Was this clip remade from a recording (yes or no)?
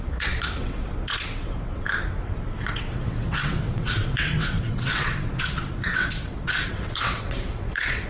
yes